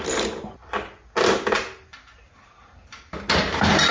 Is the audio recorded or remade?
recorded